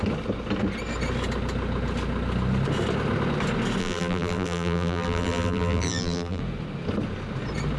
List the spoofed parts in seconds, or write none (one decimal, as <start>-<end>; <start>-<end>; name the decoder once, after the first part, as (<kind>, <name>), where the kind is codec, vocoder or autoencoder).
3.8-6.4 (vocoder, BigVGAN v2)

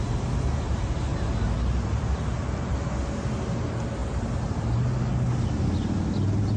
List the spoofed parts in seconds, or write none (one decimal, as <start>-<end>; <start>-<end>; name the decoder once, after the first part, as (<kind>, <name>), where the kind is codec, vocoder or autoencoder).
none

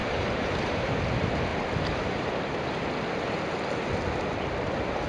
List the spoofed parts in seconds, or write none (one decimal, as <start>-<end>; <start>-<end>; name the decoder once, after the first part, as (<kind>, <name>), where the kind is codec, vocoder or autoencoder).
0.0-1.0 (vocoder, BigVGAN v2); 1.5-2.9

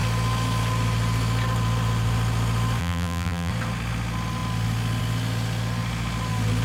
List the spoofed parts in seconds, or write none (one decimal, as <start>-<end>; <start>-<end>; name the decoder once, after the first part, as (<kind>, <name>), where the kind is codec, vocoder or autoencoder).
2.8-3.5 (vocoder, BigVGAN v2)

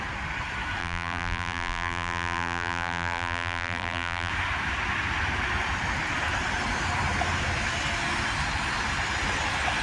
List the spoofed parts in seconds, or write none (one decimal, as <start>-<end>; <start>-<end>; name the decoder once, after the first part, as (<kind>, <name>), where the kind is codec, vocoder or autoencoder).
0.8-4.3 (vocoder, BigVGAN v2)

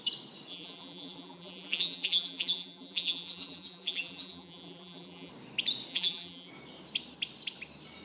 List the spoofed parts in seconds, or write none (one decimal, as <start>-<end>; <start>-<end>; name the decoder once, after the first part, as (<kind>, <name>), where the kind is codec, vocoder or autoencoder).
0.5-5.3 (vocoder, BigVGAN v2); 5.9-6.5

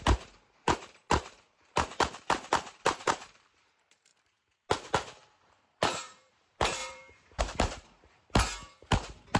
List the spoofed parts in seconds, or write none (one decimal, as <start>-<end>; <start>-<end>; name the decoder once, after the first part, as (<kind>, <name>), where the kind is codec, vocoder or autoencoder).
0.0-4.1 (vocoder, BigVGAN v2); 5.4-9.4

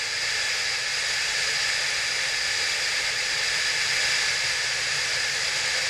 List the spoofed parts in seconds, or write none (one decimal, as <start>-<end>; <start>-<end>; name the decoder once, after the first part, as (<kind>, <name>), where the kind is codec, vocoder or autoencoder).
none